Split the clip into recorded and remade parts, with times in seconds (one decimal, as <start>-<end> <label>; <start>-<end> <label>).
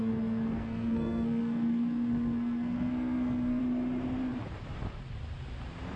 0.0-3.6 remade; 3.6-6.0 recorded